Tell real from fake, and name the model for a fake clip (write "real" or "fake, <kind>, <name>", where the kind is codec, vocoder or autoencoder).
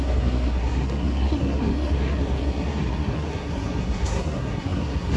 fake, codec, SNAC